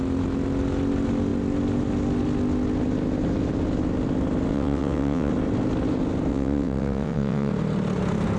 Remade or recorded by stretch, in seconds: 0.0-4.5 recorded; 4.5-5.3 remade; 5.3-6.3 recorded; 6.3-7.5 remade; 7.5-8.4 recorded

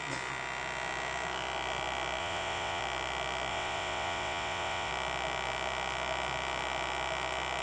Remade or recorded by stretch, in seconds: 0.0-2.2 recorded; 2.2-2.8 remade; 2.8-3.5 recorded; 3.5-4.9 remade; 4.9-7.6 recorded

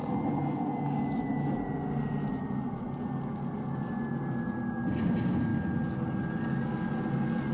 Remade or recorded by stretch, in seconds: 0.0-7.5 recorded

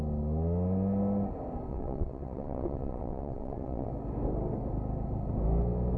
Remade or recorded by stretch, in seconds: 0.0-1.7 recorded; 1.7-3.9 remade; 3.9-6.0 recorded

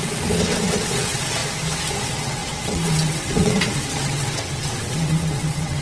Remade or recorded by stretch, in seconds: 0.0-1.4 remade; 1.4-2.0 recorded; 2.0-5.8 remade

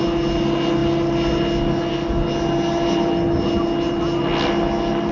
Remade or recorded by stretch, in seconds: 0.0-5.1 recorded

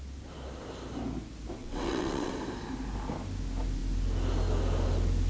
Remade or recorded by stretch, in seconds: 0.0-1.6 recorded; 1.6-2.3 remade; 2.3-5.3 recorded